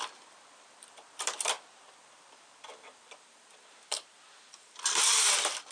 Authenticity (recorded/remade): remade